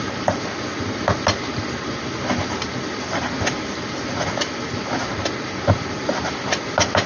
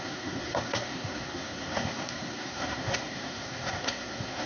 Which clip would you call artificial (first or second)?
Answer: second